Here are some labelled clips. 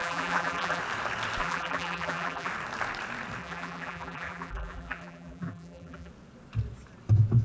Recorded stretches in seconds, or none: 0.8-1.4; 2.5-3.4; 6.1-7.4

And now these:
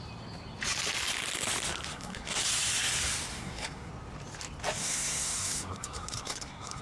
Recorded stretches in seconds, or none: 0.0-1.9; 2.4-3.3; 3.9-4.8

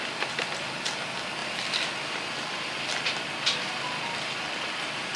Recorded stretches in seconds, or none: 0.0-5.2

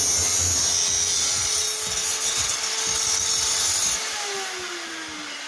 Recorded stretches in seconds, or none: 0.0-5.5

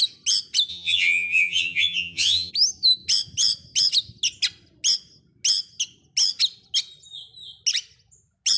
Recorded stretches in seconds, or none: 0.0-0.7; 2.5-8.6